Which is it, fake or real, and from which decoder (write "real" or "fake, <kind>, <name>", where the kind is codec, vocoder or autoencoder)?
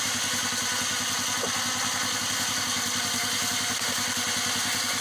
real